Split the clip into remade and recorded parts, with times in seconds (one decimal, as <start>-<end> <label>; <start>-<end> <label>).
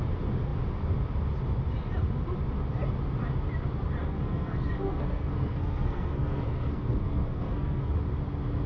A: 0.0-4.0 recorded; 4.0-7.9 remade; 7.9-8.7 recorded